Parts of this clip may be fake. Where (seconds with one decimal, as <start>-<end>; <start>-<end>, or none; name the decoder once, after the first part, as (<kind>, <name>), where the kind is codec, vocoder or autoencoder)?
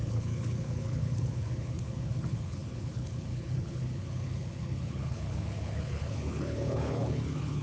0.0-7.6 (codec, HILCodec)